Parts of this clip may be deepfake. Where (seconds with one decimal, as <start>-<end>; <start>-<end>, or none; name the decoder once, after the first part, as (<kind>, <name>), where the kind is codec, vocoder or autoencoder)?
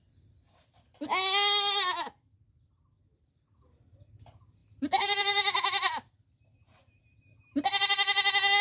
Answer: 4.6-7.0 (vocoder, BigVGAN v2)